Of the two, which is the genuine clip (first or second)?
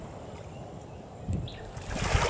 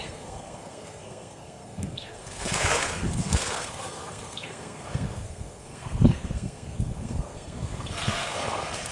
first